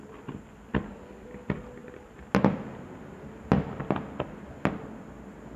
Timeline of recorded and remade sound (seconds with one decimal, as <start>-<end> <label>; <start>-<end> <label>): 0.0-5.6 recorded

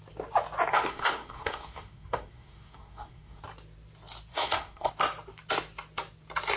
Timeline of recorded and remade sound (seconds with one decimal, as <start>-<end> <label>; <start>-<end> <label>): 0.0-0.7 recorded; 0.7-3.4 remade; 3.4-4.3 recorded; 4.3-4.9 remade; 4.9-6.6 recorded

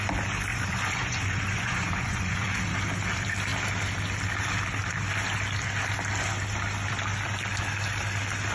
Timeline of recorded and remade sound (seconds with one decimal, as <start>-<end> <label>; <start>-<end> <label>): 0.0-0.5 recorded; 0.5-2.6 remade; 2.6-8.5 recorded

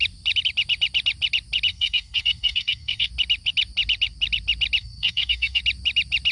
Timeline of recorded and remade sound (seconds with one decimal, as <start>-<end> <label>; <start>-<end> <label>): 0.0-1.7 recorded; 1.7-3.1 remade; 3.1-4.8 recorded; 4.8-5.6 remade; 5.6-6.3 recorded

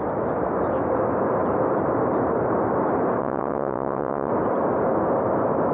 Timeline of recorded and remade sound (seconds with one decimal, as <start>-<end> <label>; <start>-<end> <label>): 0.0-3.2 recorded; 3.2-4.3 remade; 4.3-5.7 recorded

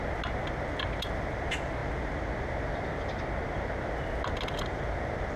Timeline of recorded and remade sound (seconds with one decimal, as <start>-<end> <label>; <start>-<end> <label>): 0.0-5.4 recorded